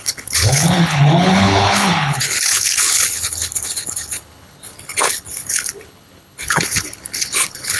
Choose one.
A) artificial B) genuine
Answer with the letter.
A